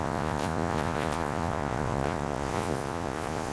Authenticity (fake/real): fake